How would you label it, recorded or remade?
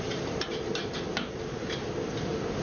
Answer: recorded